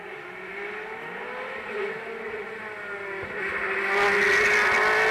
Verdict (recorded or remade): recorded